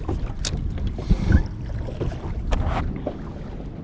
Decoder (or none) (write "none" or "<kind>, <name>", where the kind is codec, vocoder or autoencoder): none